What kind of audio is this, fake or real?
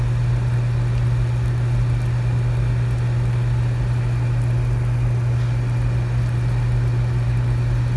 real